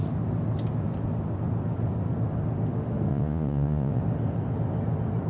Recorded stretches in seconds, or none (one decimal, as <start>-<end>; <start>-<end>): 0.0-3.1; 4.0-5.3